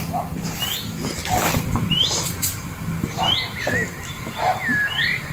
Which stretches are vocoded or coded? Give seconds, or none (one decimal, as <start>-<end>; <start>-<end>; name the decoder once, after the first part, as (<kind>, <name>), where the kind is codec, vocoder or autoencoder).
1.2-3.0 (vocoder, BigVGAN v2)